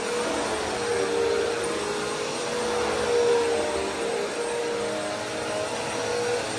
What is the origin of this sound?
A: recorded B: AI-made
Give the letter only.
A